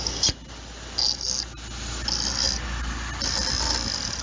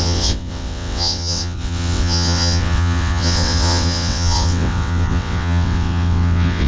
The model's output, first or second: second